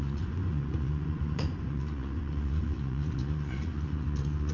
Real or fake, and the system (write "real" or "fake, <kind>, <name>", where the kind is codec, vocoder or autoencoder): fake, vocoder, Vocos